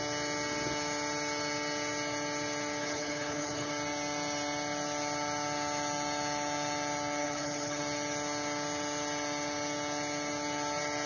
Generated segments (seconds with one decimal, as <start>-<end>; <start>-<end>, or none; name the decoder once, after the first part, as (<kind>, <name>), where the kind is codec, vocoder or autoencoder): 2.8-3.7 (codec, HILCodec); 7.2-7.8